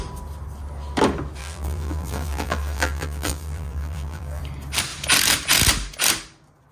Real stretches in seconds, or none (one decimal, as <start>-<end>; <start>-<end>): 0.0-1.4; 4.4-6.7